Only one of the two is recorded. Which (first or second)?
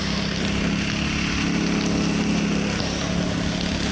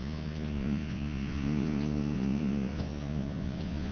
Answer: first